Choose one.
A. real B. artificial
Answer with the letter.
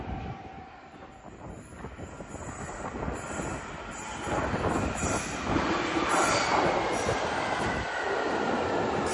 A